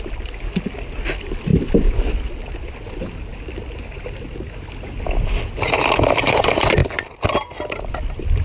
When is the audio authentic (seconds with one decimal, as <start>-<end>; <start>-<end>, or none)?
0.0-8.4